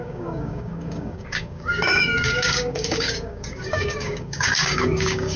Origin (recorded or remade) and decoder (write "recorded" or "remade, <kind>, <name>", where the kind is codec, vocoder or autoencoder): remade, codec, DAC